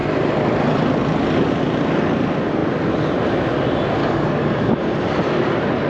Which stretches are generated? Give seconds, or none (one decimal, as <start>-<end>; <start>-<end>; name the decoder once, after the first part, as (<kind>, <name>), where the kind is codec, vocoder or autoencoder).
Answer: 4.0-4.7 (codec, DAC)